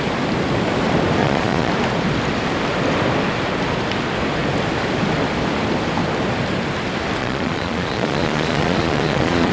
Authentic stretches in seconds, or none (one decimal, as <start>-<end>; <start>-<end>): 0.0-1.2; 1.7-7.2